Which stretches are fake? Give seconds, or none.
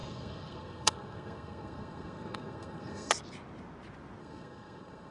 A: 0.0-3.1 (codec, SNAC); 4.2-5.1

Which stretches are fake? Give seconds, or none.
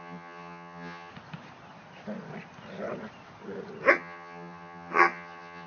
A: 0.0-1.1 (vocoder, HiFi-GAN); 3.9-5.7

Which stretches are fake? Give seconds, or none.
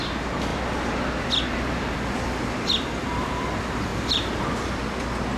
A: 3.9-4.7 (vocoder, BigVGAN v2)